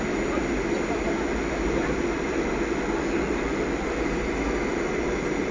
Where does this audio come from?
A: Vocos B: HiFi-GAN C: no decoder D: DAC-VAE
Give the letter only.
C